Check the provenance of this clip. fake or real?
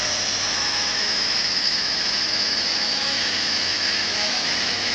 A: fake